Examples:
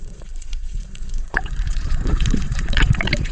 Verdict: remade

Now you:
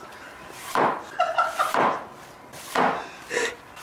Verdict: recorded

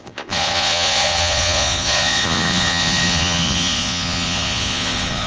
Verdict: remade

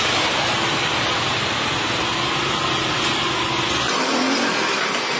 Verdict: recorded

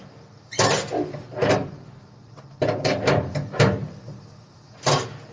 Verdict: recorded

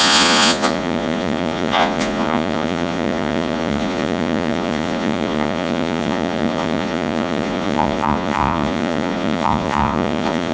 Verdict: remade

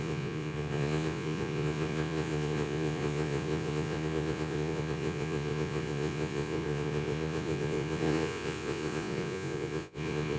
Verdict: remade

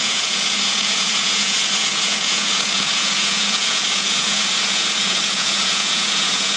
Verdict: remade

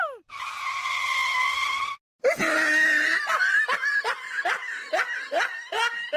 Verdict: recorded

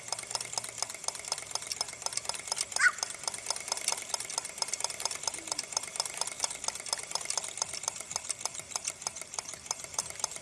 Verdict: recorded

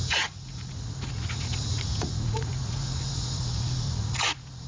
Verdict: remade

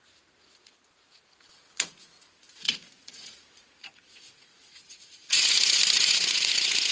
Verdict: remade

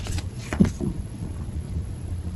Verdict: remade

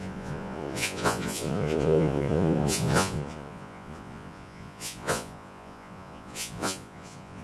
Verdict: remade